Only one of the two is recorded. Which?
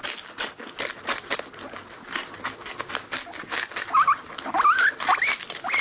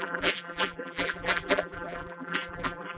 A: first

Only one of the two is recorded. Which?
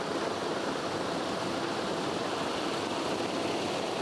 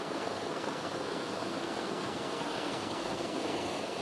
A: first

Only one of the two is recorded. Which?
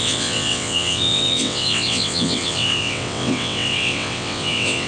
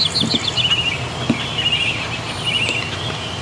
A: second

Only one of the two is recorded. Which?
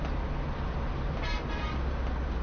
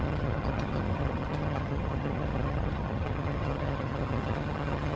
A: first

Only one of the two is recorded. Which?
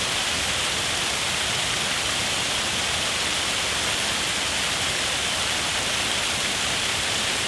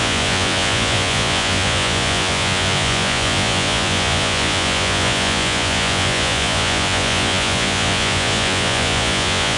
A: first